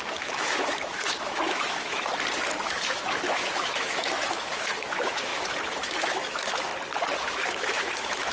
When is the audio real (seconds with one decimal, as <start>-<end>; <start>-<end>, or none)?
2.1-2.6; 6.7-7.3